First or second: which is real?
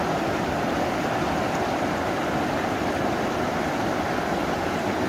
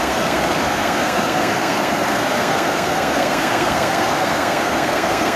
first